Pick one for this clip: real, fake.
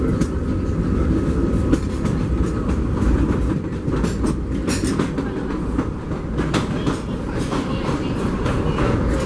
real